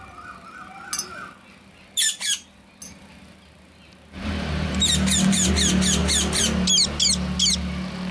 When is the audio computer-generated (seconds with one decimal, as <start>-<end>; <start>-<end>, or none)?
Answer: 2.9-5.5